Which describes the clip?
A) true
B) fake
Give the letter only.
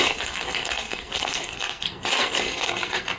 B